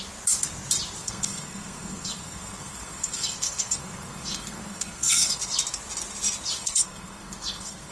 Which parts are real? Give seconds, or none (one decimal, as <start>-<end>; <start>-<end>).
0.0-1.0; 5.4-6.6